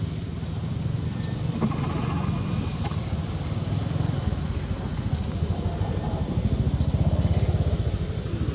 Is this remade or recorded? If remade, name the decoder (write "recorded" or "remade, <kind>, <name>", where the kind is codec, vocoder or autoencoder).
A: recorded